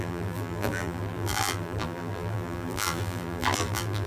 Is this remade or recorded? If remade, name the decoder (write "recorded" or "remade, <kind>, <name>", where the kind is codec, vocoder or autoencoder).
remade, vocoder, BigVGAN v2